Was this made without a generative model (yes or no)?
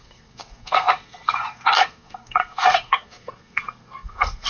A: no